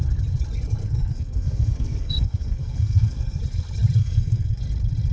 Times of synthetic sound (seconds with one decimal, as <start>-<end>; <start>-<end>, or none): 0.8-3.4; 4.0-4.6

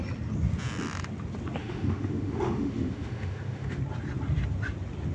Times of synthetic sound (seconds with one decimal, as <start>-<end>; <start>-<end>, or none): 1.6-3.8

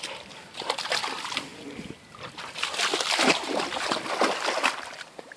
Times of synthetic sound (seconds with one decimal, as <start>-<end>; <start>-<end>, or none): none

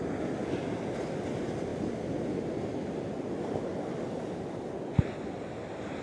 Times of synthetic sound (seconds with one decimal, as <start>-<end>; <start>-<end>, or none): none